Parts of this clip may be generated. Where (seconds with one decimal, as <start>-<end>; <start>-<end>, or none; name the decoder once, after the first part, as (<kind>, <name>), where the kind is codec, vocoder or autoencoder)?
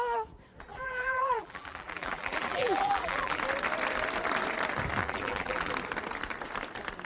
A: 0.7-3.4 (vocoder, BigVGAN v2); 5.0-5.7